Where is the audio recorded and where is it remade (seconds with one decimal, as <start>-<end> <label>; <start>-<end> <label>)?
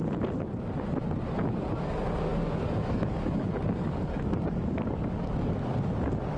0.0-2.3 recorded; 2.3-5.7 remade; 5.7-6.4 recorded